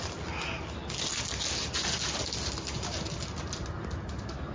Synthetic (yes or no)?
no